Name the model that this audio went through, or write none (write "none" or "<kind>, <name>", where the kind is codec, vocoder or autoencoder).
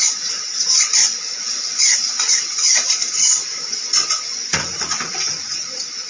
vocoder, Vocos